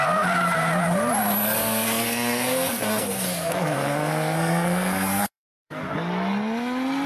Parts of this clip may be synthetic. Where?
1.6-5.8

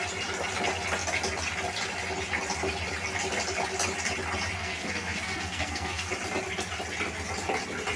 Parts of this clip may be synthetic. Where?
4.6-6.1